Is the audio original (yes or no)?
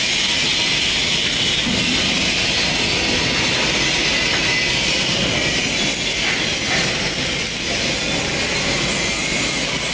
yes